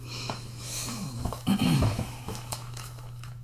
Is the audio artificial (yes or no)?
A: yes